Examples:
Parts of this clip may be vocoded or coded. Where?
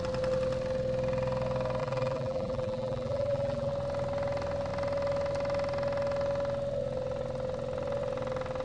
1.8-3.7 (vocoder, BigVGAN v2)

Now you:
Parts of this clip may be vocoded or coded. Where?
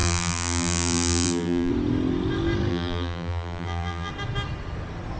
0.0-1.7 (vocoder, BigVGAN v2); 2.7-4.1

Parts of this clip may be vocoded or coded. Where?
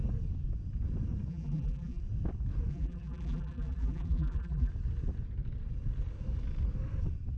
1.3-2.0 (vocoder, BigVGAN v2); 2.7-4.7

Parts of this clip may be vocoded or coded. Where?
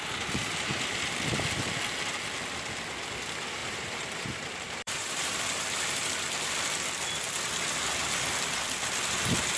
3.6-6.2 (vocoder, BigVGAN v2)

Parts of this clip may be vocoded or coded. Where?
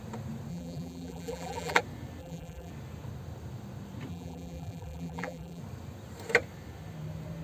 0.5-1.8 (vocoder, BigVGAN v2); 2.2-2.7; 4.1-5.6